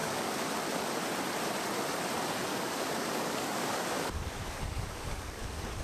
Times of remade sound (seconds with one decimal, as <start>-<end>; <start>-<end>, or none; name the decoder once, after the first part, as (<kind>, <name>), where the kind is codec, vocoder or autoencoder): 0.0-0.5 (codec, DAC); 2.5-5.8